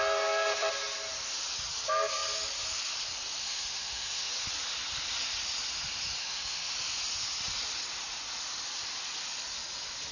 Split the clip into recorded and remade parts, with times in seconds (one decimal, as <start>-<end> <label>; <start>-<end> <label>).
0.0-3.4 recorded; 3.4-4.3 remade; 4.3-6.2 recorded; 6.2-6.7 remade; 6.7-10.1 recorded